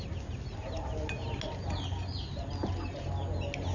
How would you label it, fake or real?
real